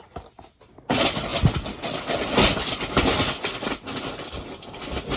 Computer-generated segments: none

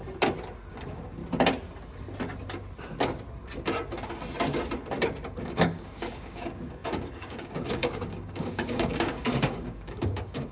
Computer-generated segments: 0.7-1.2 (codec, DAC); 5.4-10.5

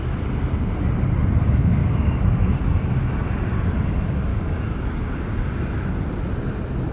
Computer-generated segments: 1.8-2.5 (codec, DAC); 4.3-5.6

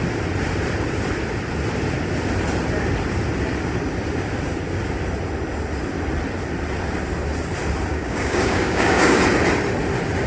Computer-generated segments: 7.9-9.2 (codec, DAC)

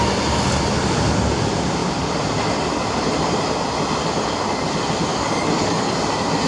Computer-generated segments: 5.1-6.0 (codec, DAC)

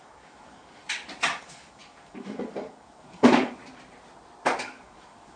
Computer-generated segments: 0.0-0.8 (codec, DAC); 1.4-3.6; 4.6-5.4

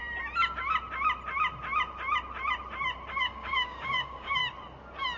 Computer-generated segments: 3.1-4.4 (codec, DAC)